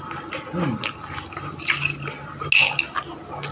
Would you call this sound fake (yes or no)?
no